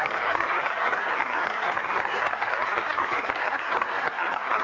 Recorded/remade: remade